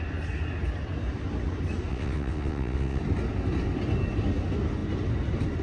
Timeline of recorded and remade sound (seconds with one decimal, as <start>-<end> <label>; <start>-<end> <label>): 0.0-1.9 recorded; 1.9-3.0 remade; 3.0-5.6 recorded